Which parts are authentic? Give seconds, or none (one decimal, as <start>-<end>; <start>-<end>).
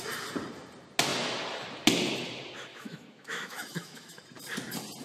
0.0-2.7; 4.2-5.0